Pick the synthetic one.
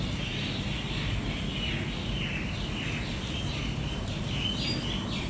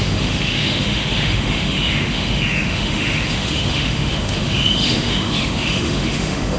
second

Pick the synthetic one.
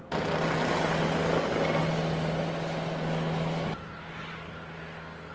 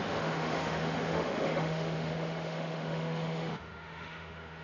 second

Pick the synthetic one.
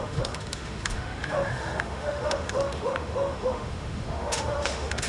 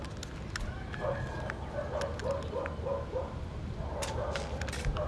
first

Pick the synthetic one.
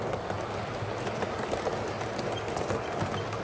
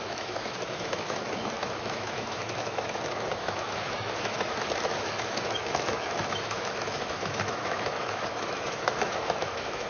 second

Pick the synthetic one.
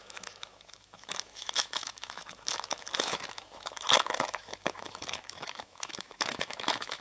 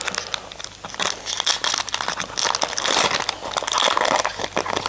first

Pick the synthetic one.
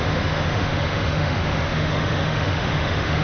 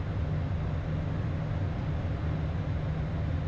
first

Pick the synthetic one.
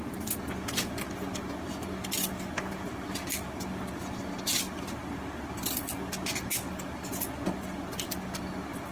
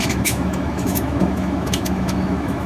second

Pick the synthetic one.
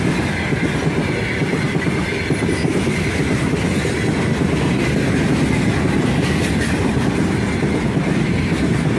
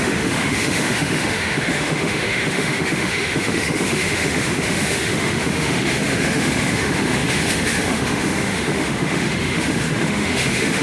second